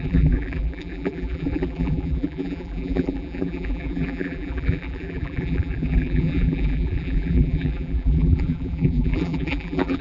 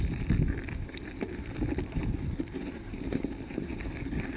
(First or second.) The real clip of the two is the second